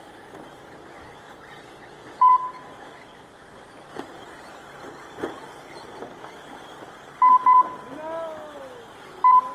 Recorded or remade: recorded